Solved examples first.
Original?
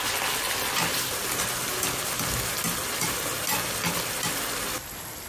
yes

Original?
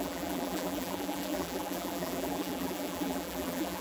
no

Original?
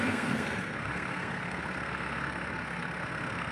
no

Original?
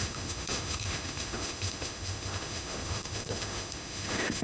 no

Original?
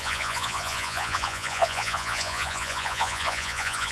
no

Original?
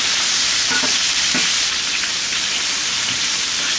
no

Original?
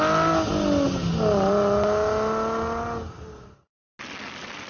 yes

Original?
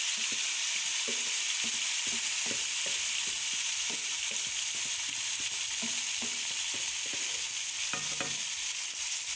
yes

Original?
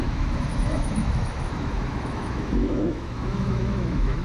no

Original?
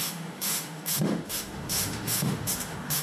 no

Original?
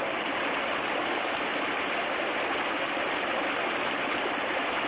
yes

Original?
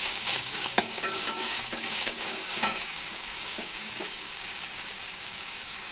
no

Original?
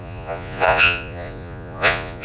no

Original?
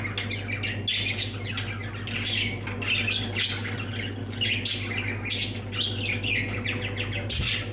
yes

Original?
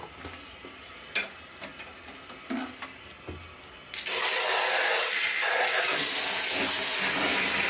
yes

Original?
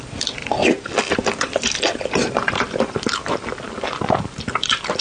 yes